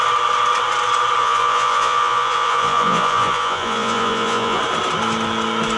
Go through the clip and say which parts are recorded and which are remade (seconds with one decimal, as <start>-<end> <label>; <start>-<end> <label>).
0.0-1.2 recorded; 1.2-4.6 remade; 4.6-5.8 recorded